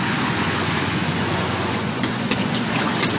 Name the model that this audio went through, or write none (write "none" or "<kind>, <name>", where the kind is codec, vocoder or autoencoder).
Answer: vocoder, Vocos